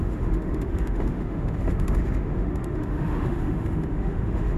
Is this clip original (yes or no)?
no